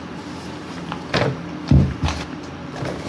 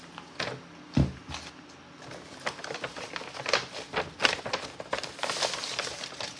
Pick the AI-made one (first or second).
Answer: first